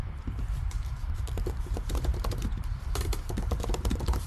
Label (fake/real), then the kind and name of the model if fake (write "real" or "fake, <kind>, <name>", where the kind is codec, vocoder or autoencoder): fake, vocoder, BigVGAN v2